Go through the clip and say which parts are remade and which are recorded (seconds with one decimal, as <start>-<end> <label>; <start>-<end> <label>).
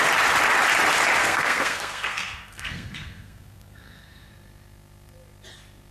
0.0-1.2 recorded; 1.2-4.3 remade; 4.3-5.9 recorded